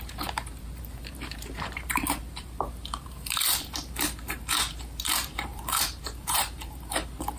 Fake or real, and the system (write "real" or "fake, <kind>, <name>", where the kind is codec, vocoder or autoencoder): fake, vocoder, BigVGAN v2